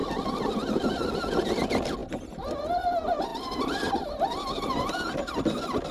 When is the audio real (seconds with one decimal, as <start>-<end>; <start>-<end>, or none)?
1.5-5.9